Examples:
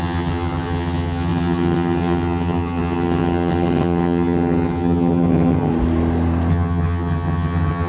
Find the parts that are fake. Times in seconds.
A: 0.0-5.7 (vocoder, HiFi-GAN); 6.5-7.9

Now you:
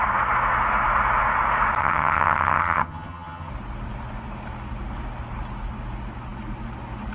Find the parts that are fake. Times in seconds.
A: 1.8-3.5 (vocoder, HiFi-GAN)

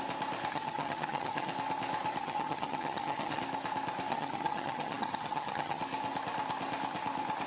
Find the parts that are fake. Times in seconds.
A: 0.5-1.5 (vocoder, HiFi-GAN); 2.2-3.4; 4.1-5.8

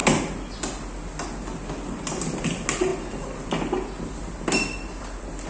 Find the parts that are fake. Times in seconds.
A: none

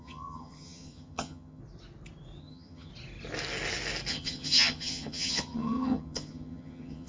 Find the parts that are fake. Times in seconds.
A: 0.0-1.6 (vocoder, HiFi-GAN); 2.4-2.9; 4.1-7.1

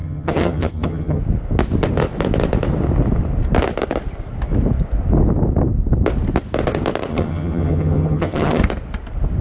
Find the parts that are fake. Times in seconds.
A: 0.0-1.2 (vocoder, HiFi-GAN); 7.1-8.6

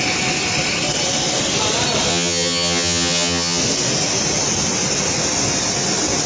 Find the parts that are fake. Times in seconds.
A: 2.1-3.6 (vocoder, HiFi-GAN)